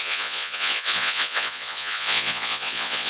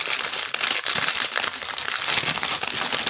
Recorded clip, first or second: second